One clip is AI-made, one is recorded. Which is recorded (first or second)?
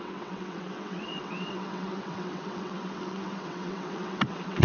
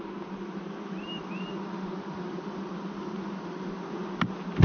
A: second